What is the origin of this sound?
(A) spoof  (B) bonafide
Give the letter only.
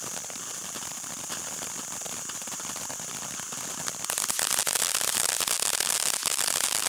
B